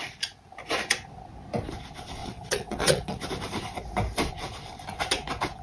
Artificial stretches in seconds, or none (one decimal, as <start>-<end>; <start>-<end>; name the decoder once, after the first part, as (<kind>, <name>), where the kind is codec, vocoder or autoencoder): 2.2-3.2 (vocoder, WaveNeXt)